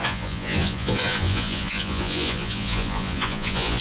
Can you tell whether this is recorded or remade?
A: remade